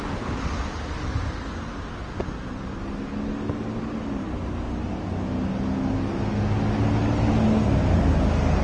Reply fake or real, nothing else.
real